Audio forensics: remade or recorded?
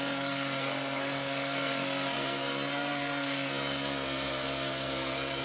remade